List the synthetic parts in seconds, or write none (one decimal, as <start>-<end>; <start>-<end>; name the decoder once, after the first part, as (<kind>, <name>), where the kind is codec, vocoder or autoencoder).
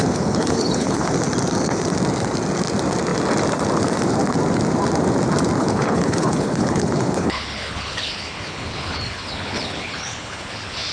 0.0-1.1 (codec, HILCodec); 5.6-10.9